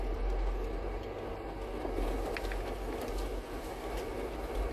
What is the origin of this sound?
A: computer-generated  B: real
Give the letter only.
B